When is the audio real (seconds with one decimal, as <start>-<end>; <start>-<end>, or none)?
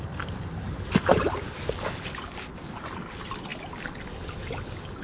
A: 0.0-5.0